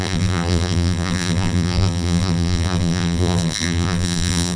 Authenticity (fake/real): fake